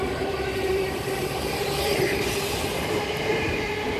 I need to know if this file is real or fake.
fake